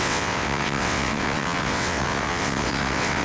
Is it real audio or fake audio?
fake